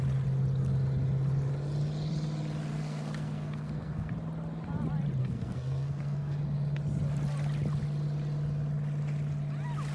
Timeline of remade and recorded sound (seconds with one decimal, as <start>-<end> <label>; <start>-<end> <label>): 0.0-2.7 recorded; 2.7-4.1 remade; 4.1-5.2 recorded; 5.2-6.4 remade; 6.4-9.9 recorded